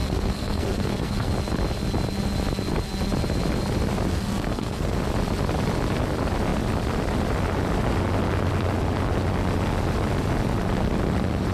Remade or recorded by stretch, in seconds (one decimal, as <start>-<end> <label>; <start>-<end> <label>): 0.0-1.3 remade; 1.3-4.1 recorded; 4.1-5.0 remade; 5.0-11.5 recorded